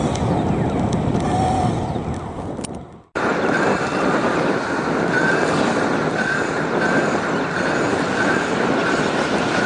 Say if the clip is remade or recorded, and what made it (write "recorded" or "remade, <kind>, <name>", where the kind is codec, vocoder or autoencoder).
recorded